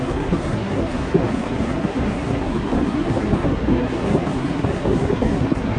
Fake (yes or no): yes